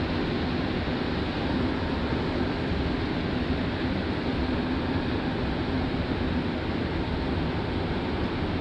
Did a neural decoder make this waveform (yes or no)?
no